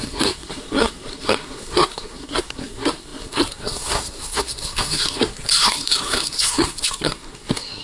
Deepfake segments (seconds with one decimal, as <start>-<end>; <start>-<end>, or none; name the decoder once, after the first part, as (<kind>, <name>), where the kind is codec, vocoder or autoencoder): 0.0-7.8 (codec, SNAC)